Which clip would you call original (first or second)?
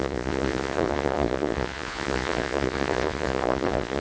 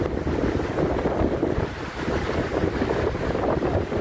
second